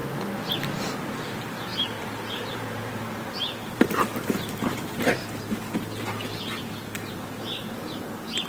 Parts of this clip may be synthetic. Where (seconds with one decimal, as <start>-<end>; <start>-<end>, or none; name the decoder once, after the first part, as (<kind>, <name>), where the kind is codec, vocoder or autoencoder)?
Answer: 0.5-5.2 (vocoder, BigVGAN v2); 7.1-8.5